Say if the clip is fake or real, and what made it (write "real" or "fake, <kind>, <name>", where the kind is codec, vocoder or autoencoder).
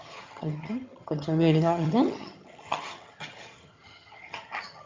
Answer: fake, vocoder, HiFi-GAN